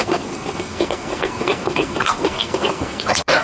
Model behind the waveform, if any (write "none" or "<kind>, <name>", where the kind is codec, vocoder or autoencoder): codec, SNAC